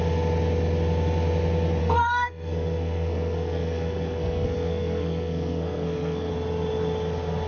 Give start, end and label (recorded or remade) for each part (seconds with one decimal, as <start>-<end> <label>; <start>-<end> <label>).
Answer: 0.0-1.8 recorded; 1.8-6.3 remade; 6.3-7.5 recorded